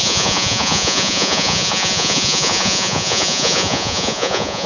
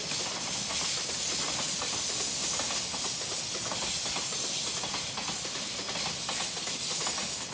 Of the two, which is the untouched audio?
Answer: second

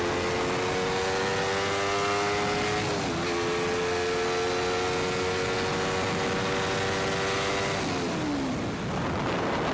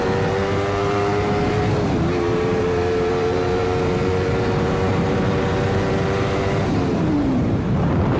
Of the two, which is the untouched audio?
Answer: first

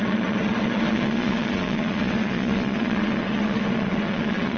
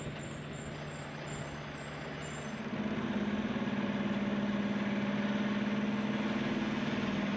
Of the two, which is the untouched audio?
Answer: second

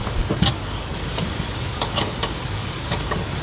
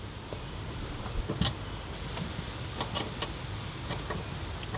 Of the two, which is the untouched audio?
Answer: second